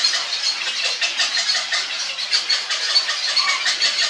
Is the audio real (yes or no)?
yes